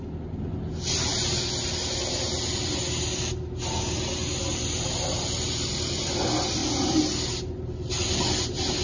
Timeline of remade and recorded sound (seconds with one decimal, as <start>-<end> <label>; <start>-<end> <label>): 0.0-8.8 recorded